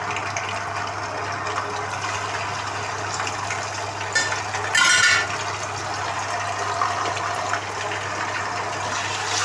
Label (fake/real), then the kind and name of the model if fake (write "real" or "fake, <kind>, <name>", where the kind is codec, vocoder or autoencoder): real